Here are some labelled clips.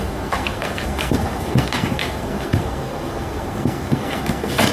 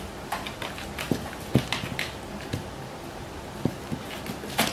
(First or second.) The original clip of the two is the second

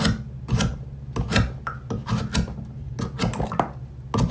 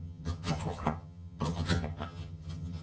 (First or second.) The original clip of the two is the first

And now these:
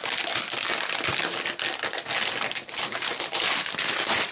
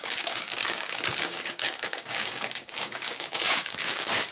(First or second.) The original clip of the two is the first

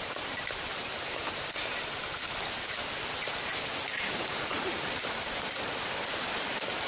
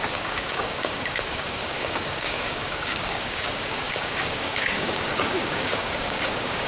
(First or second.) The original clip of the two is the first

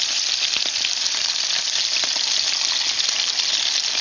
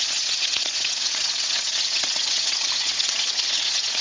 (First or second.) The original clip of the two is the first